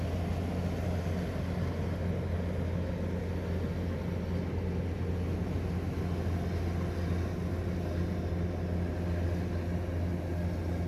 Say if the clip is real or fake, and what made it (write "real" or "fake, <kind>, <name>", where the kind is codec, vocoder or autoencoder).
real